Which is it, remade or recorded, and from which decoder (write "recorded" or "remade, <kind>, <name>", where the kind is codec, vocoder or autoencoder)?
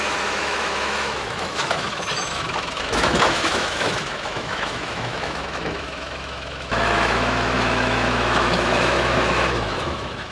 remade, autoencoder, DAC-VAE